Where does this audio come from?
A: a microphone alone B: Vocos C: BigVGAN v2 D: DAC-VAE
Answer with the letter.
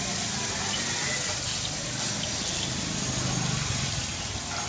A